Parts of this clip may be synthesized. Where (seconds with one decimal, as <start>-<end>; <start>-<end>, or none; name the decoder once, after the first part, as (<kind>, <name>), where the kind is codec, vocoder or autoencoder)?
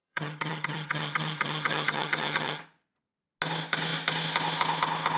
0.0-2.6 (vocoder, HiFi-GAN)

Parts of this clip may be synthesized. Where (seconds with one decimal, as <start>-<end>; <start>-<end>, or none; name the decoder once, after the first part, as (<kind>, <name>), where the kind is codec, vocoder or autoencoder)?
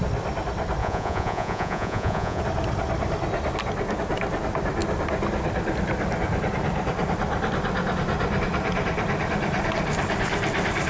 0.8-2.4 (vocoder, Vocos)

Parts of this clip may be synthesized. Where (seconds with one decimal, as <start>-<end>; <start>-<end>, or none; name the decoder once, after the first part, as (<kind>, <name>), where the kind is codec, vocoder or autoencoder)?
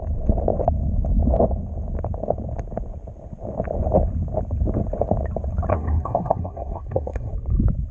5.7-7.3 (codec, SNAC)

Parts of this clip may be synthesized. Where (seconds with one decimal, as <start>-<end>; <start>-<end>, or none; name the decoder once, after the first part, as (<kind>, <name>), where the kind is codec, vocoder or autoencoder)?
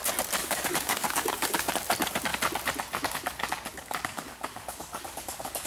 0.4-1.7 (codec, DAC); 3.7-5.7